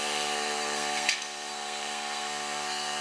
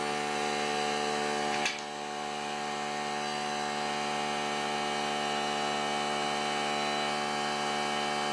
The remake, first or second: first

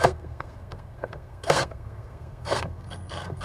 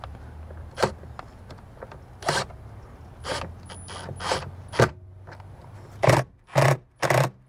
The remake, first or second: first